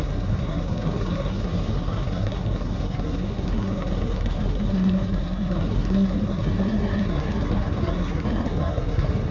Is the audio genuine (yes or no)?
no